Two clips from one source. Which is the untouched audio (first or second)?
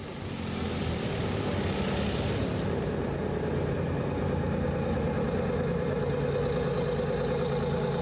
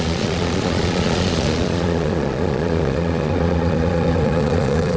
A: first